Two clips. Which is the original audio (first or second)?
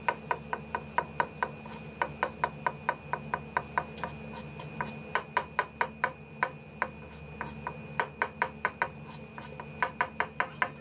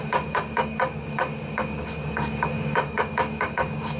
first